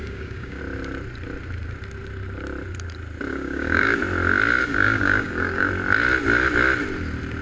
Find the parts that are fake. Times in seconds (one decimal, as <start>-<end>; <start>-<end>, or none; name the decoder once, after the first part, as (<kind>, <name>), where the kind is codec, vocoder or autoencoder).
0.0-0.6 (codec, DAC); 3.3-4.0; 4.6-5.7